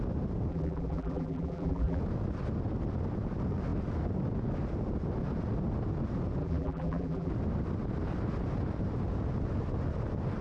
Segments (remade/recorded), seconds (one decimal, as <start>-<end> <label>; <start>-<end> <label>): 0.0-0.5 recorded; 0.5-2.0 remade; 2.0-6.4 recorded; 6.4-7.3 remade; 7.3-10.4 recorded